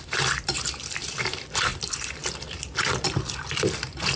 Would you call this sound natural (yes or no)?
no